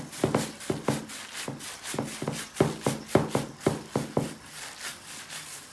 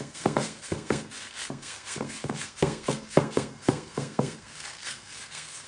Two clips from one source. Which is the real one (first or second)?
first